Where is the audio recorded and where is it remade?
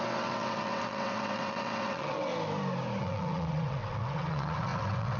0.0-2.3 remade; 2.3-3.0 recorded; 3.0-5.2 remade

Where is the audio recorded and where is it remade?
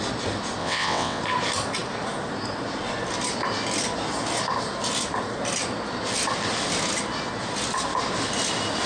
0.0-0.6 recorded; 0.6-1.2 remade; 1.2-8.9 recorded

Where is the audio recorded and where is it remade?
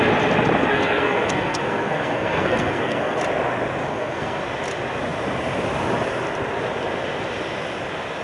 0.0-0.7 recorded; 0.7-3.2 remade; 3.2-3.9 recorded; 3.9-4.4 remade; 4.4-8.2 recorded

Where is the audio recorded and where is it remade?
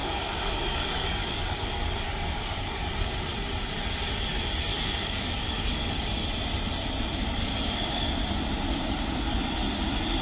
0.0-2.9 remade; 2.9-4.7 recorded; 4.7-5.9 remade; 5.9-7.4 recorded; 7.4-8.1 remade; 8.1-10.2 recorded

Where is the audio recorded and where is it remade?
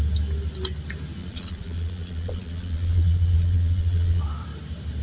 0.0-1.2 recorded; 1.2-4.2 remade; 4.2-5.0 recorded